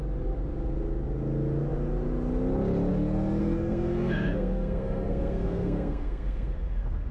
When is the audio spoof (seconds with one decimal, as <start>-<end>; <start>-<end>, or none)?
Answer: 3.4-7.1